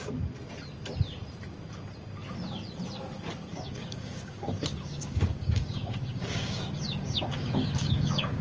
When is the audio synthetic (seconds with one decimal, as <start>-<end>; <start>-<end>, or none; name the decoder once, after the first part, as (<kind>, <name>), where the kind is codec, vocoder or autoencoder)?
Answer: 3.5-8.4 (codec, DAC)